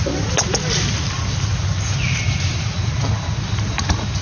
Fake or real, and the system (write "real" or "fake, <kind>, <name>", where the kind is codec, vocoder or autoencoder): real